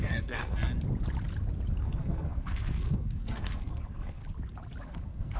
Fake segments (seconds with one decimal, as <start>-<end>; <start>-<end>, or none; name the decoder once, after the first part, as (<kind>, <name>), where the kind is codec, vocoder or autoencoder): 0.0-0.7 (codec, SNAC); 1.8-4.2; 4.8-5.4